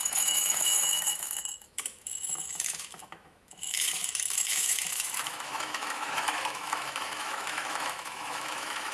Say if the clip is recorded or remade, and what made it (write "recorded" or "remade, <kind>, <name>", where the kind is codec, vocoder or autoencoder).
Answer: remade, autoencoder, DAC-VAE